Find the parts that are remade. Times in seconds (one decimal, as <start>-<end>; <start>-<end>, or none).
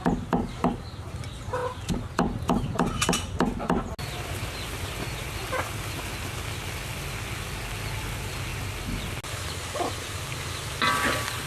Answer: none